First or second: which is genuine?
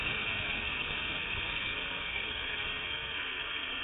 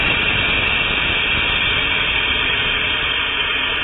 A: second